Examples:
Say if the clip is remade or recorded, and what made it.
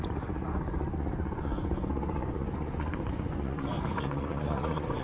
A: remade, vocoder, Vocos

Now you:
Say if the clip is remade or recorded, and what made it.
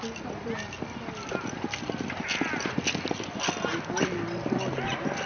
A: recorded